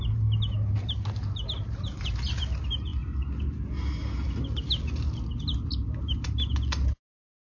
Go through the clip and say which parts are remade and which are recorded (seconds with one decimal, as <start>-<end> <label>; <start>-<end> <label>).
0.0-7.5 recorded

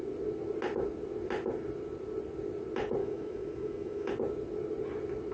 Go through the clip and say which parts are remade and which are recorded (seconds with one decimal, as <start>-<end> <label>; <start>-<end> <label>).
0.0-3.0 recorded; 3.0-4.1 remade; 4.1-5.3 recorded